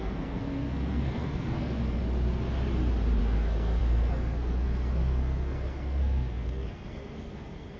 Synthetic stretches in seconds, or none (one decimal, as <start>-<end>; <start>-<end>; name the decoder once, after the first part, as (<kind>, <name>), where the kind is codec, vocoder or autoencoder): 0.0-2.0 (codec, SNAC); 3.2-7.8